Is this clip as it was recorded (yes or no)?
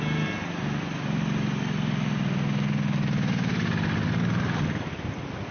yes